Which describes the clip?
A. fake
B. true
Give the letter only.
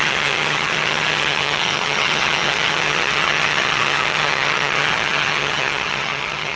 A